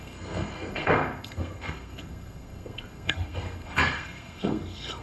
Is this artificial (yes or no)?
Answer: yes